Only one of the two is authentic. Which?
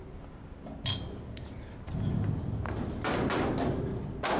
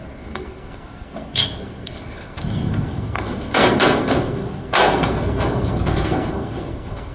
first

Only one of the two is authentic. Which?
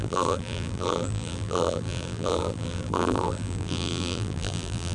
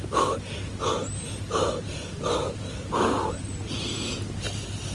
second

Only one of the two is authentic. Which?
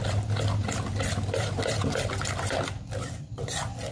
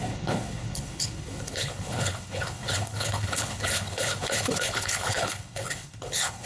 first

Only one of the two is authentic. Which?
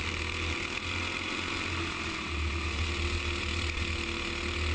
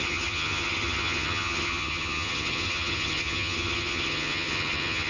first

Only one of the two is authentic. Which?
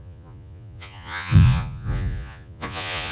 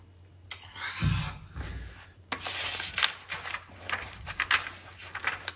second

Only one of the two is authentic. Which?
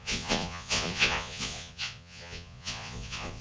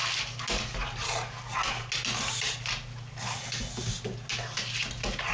second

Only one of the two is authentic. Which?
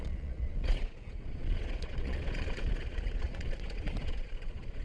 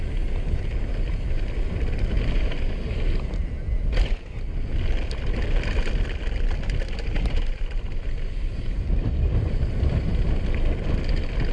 second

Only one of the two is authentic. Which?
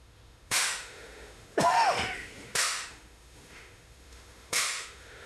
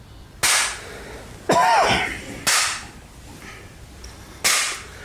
second